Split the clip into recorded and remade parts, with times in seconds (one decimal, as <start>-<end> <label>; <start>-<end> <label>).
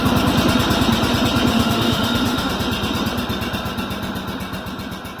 0.0-1.5 recorded; 1.5-2.5 remade; 2.5-5.2 recorded